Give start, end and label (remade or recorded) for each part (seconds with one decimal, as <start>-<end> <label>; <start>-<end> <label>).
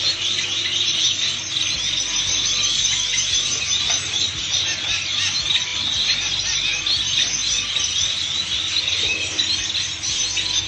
0.0-10.7 recorded